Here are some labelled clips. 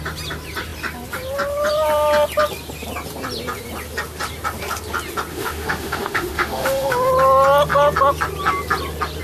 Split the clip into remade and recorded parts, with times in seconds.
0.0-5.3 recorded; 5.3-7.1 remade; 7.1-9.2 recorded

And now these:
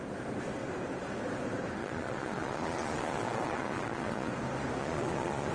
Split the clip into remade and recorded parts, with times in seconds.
0.0-1.8 recorded; 1.8-4.3 remade; 4.3-4.8 recorded; 4.8-5.5 remade

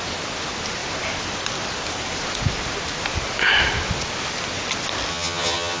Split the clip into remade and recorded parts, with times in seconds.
0.0-5.1 recorded; 5.1-5.8 remade

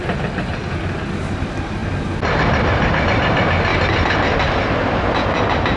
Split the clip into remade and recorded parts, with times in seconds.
0.0-5.8 recorded

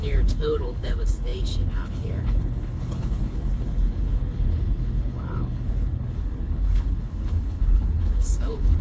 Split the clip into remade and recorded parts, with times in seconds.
0.0-8.8 remade

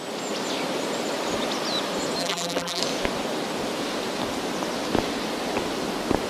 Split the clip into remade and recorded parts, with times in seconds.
0.0-2.2 recorded; 2.2-2.8 remade; 2.8-6.3 recorded

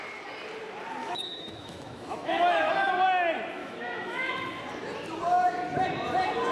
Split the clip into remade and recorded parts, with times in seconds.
0.0-1.0 recorded; 1.0-2.7 remade; 2.7-3.6 recorded; 3.6-4.4 remade; 4.4-6.5 recorded

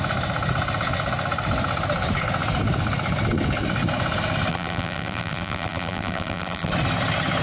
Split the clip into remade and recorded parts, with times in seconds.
0.0-4.5 recorded; 4.5-6.7 remade; 6.7-7.4 recorded